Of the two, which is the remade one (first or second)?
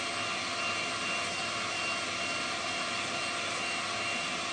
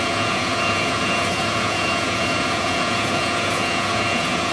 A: second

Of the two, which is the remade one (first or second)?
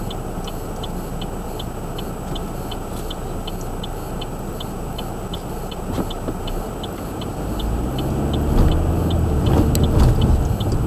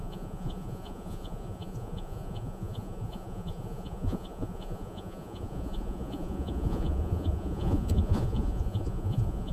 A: second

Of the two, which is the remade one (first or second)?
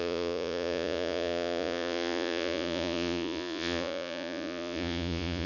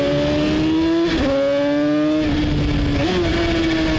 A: first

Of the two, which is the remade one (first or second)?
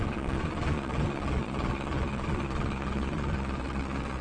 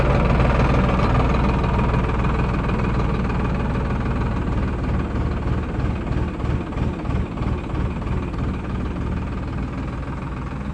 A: first